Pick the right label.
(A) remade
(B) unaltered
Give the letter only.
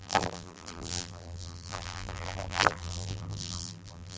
A